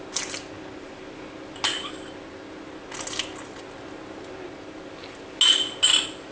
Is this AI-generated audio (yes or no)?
no